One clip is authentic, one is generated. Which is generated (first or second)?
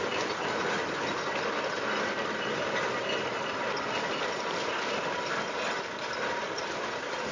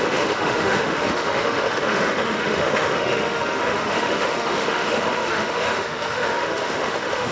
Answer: second